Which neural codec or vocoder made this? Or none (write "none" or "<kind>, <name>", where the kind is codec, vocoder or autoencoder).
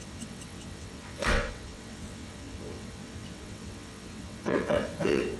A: vocoder, WaveNeXt